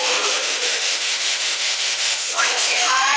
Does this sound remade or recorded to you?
remade